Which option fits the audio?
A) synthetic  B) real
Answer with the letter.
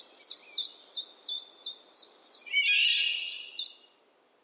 B